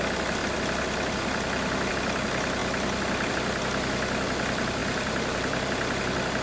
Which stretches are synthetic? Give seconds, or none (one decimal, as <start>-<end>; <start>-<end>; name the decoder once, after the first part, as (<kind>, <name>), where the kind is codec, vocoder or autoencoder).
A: 0.4-1.9 (vocoder, BigVGAN v2); 4.8-6.0